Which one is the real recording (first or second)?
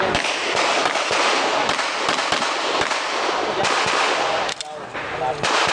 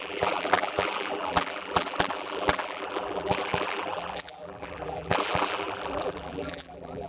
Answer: first